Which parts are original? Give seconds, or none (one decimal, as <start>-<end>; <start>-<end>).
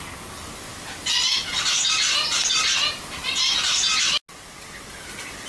0.0-0.7; 4.0-5.5